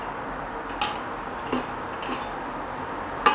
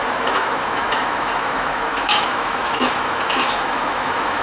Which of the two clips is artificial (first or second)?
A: second